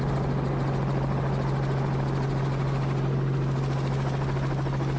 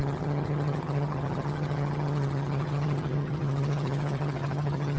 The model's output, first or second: second